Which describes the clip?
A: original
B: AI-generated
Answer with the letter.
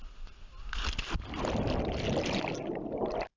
A